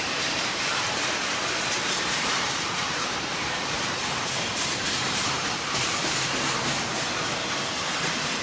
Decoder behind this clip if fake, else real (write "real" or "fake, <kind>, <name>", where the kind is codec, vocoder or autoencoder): fake, vocoder, BigVGAN v2